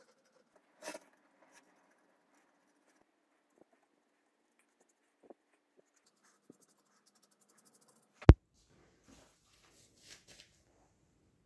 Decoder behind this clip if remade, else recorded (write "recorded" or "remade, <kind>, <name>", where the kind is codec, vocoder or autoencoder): recorded